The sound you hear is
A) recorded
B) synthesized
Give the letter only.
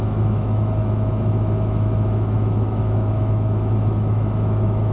B